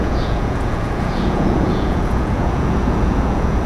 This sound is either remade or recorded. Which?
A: remade